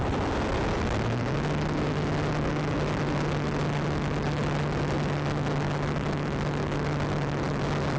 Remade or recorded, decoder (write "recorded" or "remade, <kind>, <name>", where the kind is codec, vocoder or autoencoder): recorded